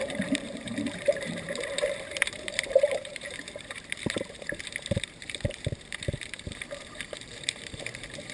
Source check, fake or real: fake